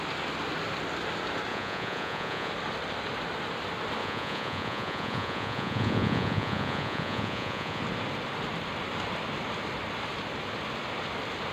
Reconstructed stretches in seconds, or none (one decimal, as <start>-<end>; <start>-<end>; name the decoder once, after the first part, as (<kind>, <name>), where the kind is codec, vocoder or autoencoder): 1.5-2.5 (vocoder, Vocos); 4.0-7.8